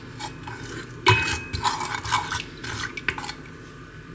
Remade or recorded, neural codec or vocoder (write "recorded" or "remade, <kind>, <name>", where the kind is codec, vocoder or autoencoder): recorded